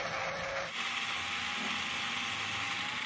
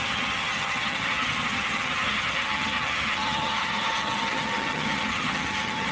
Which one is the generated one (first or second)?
second